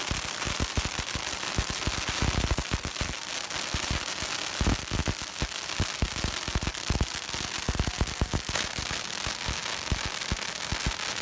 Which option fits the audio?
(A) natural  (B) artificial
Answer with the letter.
A